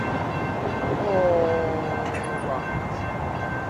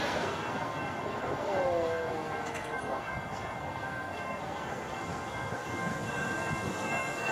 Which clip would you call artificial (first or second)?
second